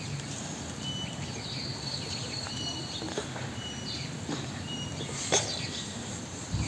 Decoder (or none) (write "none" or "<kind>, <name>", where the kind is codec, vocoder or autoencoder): none